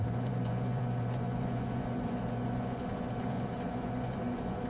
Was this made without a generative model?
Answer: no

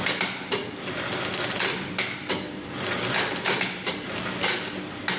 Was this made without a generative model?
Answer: yes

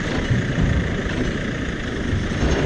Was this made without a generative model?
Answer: no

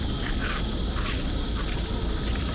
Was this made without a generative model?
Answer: yes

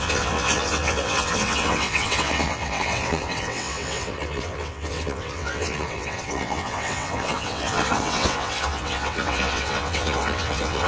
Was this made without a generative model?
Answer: no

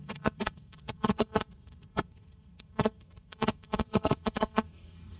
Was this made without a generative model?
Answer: no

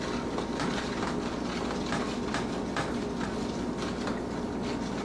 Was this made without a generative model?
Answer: yes